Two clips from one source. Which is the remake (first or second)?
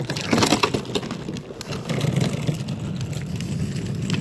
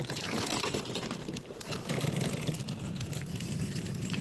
second